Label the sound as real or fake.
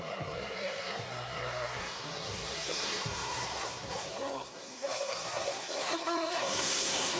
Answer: fake